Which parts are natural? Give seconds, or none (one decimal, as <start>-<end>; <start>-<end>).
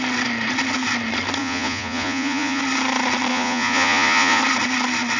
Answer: 0.0-1.4; 2.6-3.3; 4.4-5.2